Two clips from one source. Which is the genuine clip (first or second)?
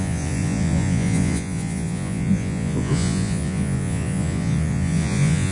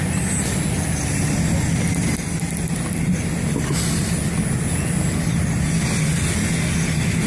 second